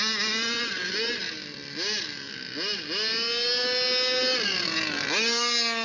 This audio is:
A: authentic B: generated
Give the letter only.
A